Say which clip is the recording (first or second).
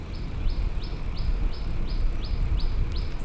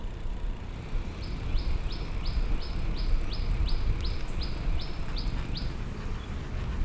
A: second